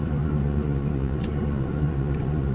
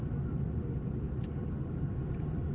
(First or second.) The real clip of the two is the second